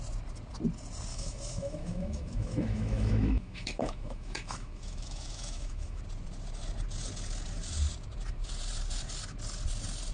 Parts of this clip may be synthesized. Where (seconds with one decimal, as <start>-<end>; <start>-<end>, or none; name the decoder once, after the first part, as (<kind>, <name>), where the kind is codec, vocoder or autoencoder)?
1.1-6.0 (autoencoder, DAC-VAE)